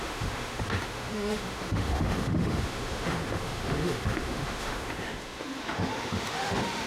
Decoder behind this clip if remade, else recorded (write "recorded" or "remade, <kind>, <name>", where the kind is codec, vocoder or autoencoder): remade, autoencoder, DAC-VAE